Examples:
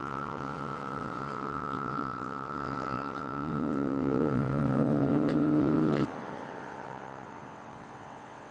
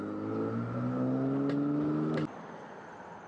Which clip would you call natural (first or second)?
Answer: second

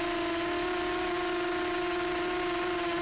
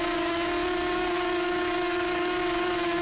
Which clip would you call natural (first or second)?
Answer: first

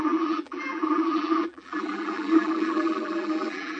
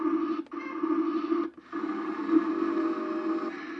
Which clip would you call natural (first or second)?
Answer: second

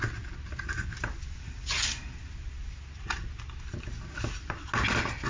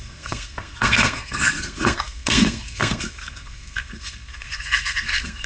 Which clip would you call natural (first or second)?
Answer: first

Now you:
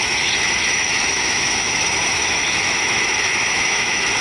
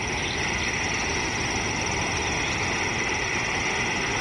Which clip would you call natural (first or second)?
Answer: second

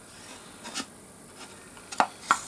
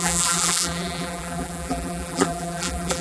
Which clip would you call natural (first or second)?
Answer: first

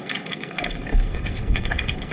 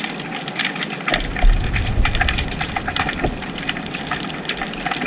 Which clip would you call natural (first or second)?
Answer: second